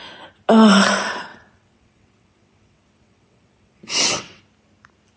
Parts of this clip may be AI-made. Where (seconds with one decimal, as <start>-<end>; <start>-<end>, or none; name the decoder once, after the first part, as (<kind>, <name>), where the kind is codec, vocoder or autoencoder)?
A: 1.3-4.4 (vocoder, WaveNeXt)